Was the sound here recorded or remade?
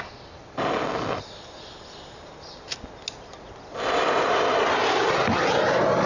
recorded